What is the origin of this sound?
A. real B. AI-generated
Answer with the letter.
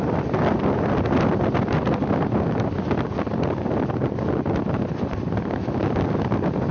A